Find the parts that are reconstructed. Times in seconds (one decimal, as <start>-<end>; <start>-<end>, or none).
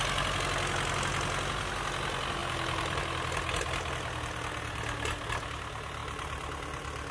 2.4-3.0; 6.0-7.1